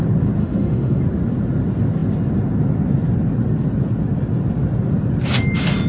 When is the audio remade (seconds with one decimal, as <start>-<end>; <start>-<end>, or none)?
0.4-1.0